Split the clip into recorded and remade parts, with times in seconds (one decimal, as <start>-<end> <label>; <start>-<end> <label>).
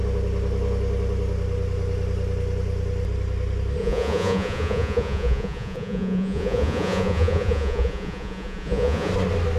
0.0-3.8 recorded; 3.8-9.1 remade; 9.1-9.6 recorded